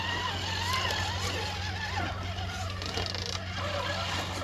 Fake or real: real